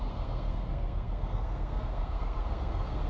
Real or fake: fake